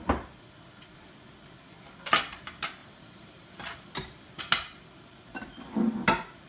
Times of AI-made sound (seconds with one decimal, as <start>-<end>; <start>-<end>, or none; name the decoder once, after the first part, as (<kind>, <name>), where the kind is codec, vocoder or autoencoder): 2.8-4.4 (vocoder, BigVGAN v2)

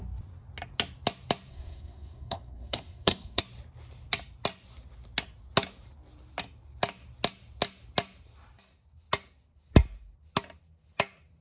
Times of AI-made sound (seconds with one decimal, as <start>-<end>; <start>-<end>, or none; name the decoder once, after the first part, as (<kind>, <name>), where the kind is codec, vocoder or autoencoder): 1.5-3.4 (codec, SNAC)

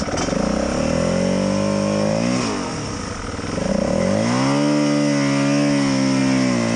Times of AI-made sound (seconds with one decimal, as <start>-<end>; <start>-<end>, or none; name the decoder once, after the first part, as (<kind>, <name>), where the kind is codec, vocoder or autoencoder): none

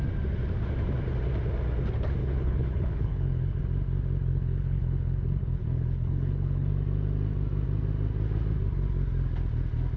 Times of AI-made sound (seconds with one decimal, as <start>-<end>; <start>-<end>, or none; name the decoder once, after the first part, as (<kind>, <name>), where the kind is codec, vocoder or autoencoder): 2.2-3.6 (codec, HILCodec); 4.3-6.7